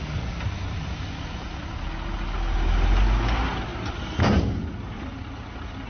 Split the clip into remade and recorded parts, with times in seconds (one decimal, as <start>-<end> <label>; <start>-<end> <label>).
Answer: 0.0-5.9 recorded